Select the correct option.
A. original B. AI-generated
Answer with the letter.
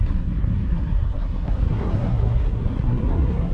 B